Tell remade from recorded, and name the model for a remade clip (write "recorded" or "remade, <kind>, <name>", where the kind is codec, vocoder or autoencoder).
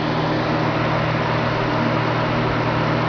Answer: recorded